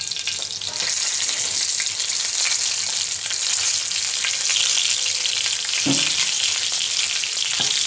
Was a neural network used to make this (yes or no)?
no